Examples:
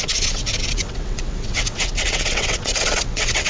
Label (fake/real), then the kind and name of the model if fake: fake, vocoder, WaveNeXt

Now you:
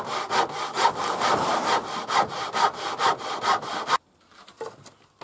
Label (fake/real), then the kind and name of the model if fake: real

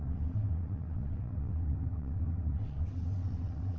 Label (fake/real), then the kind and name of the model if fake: fake, vocoder, WaveNeXt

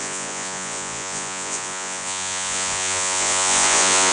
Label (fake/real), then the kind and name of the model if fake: fake, vocoder, Vocos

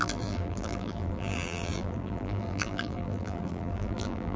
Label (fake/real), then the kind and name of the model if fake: fake, vocoder, BigVGAN v2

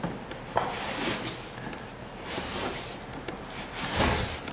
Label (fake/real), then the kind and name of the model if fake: real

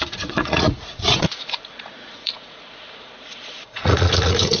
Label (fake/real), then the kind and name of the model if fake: fake, vocoder, Vocos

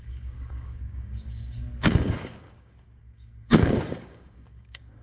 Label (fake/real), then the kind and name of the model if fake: fake, codec, DAC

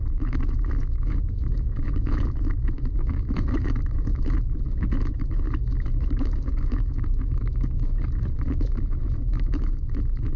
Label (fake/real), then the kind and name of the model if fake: fake, autoencoder, DAC-VAE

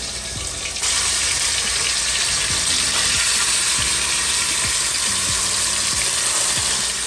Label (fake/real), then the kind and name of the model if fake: real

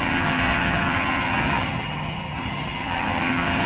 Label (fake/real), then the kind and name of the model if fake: fake, vocoder, HiFi-GAN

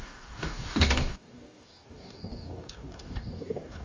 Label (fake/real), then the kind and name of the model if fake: fake, codec, DAC